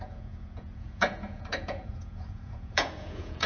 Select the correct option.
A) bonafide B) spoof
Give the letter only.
B